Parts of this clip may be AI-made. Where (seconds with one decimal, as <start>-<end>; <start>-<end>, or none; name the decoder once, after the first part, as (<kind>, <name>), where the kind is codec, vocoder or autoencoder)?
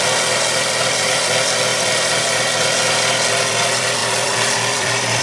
0.0-5.2 (vocoder, BigVGAN v2)